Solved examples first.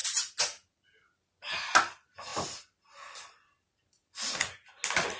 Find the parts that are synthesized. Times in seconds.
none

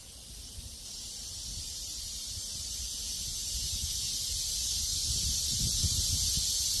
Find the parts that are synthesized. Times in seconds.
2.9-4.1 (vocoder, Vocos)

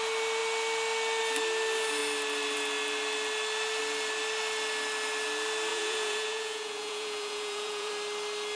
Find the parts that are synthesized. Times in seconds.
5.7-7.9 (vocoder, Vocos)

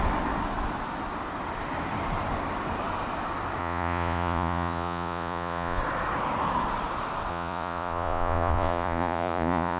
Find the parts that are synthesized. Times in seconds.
3.6-5.8 (vocoder, Vocos); 7.3-9.8

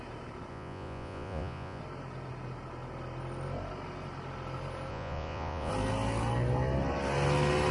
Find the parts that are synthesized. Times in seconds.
0.5-1.8 (vocoder, Vocos); 4.9-5.7

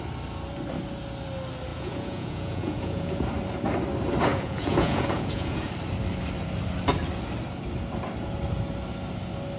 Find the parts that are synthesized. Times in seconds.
1.7-3.2 (vocoder, Vocos); 4.3-5.7

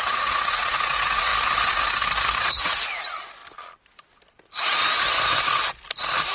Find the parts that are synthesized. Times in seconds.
0.0-1.3 (vocoder, Vocos); 2.3-3.4

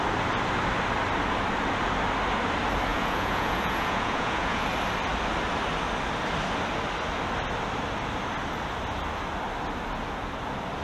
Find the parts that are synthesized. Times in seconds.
2.9-4.6 (vocoder, Vocos)